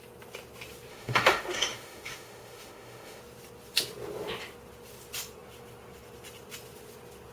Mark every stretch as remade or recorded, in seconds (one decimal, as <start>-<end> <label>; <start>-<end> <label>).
0.0-0.9 recorded; 0.9-3.2 remade; 3.2-7.3 recorded